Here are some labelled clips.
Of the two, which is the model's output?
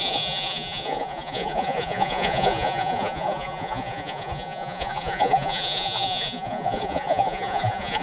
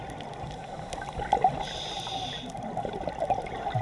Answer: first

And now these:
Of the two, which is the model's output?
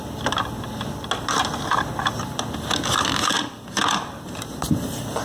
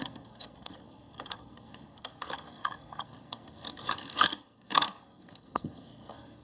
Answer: second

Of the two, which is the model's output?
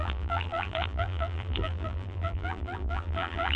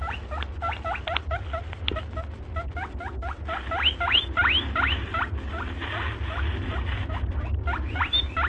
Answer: first